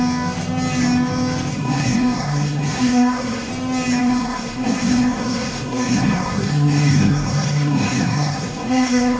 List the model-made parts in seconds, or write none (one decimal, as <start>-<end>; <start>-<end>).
1.5-3.5; 4.0-9.2